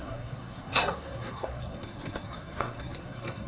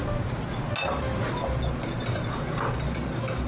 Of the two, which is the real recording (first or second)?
second